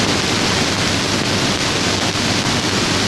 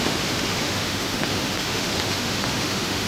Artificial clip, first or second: second